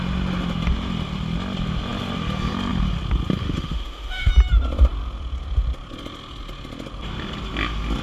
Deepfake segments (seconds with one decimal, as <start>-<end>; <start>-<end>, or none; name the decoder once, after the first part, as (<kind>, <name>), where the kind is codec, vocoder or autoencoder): 3.4-4.3 (autoencoder, DAC-VAE)